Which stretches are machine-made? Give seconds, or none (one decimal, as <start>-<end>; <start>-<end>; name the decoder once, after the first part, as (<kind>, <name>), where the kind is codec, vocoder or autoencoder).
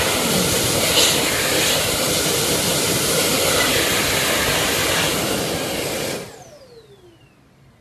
none